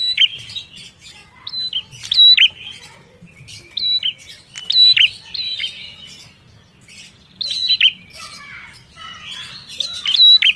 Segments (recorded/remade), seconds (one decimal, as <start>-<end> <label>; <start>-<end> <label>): 0.0-10.6 recorded